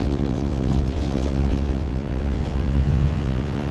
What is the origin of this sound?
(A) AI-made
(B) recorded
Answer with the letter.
A